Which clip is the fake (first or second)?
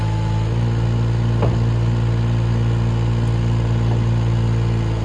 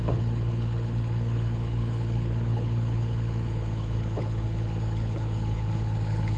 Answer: second